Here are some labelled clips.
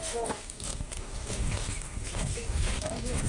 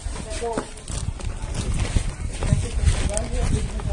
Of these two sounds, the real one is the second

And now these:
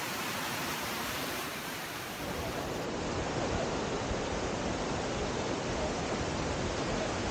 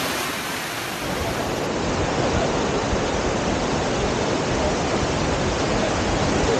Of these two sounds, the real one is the second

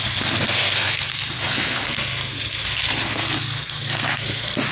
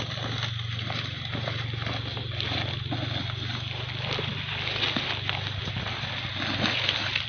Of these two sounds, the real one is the second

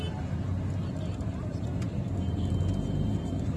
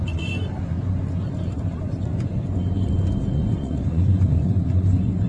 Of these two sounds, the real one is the first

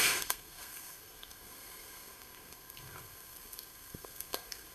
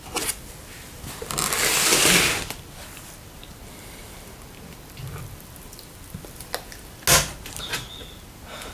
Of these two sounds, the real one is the second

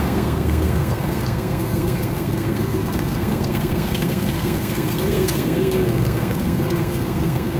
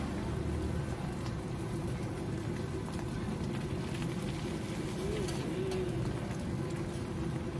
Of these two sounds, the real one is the second